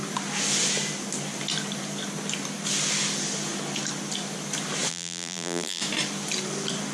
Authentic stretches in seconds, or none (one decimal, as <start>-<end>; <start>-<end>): 0.0-4.9; 5.8-6.9